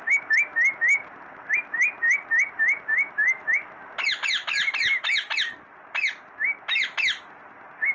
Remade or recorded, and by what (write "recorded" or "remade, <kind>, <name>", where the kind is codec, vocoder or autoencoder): recorded